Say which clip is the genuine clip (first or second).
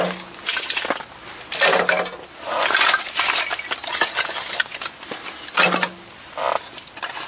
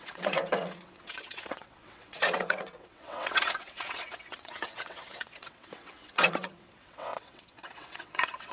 first